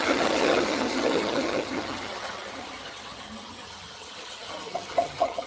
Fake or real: fake